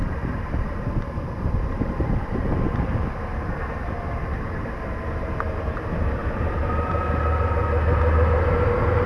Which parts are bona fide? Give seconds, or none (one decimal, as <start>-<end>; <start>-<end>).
2.9-9.1